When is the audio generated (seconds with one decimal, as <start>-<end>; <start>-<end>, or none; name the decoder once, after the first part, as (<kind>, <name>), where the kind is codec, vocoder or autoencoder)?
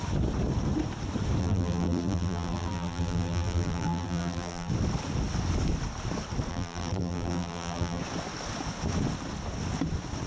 1.4-4.7 (vocoder, BigVGAN v2); 6.5-8.0